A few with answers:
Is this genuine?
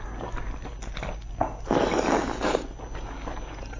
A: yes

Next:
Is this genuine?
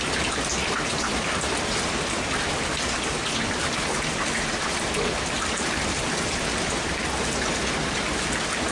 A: yes